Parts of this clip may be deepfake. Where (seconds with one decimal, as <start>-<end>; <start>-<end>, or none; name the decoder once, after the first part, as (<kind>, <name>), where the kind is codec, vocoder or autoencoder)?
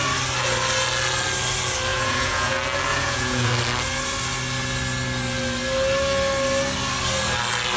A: 1.9-2.5 (vocoder, Vocos); 2.9-3.5